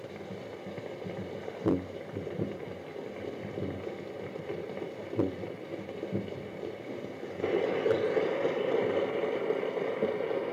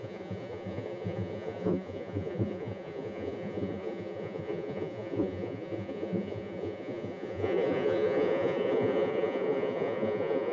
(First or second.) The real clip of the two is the first